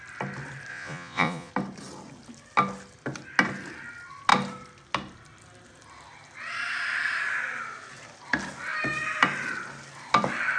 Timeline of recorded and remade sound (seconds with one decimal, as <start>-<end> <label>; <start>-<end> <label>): 0.0-0.7 recorded; 0.7-1.5 remade; 1.5-10.6 recorded